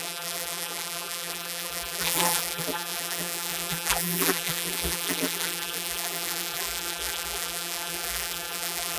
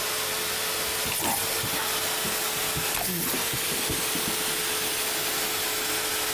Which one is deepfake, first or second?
first